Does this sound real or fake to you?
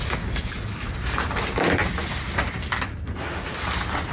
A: real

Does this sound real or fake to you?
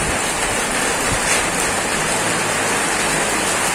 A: real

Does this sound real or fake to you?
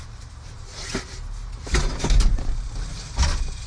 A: real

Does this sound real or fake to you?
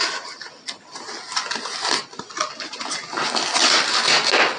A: real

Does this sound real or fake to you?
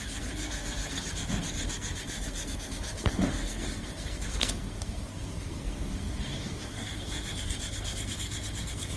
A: fake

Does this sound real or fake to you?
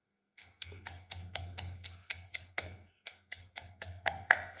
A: fake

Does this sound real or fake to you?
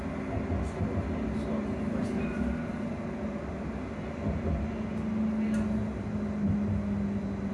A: real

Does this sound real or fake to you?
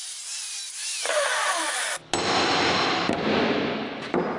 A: real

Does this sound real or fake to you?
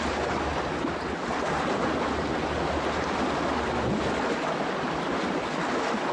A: real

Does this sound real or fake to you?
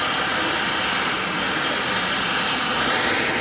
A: real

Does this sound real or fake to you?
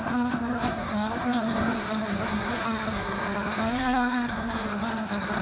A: fake